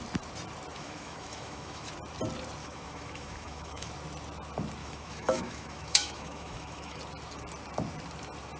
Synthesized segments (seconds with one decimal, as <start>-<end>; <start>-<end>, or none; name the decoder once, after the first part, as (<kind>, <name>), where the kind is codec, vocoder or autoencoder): 0.7-1.9 (autoencoder, DAC-VAE); 2.6-3.9; 4.8-7.0